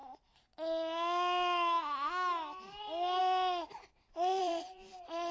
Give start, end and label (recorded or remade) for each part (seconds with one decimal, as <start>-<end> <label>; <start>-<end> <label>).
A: 0.0-4.4 recorded; 4.4-5.3 remade